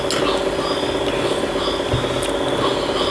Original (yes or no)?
yes